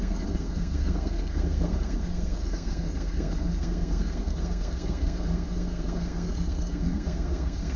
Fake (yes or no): yes